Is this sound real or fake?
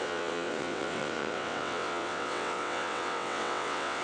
fake